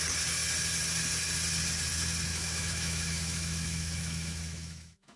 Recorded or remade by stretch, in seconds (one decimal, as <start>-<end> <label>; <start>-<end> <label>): 0.0-2.3 recorded; 2.3-5.2 remade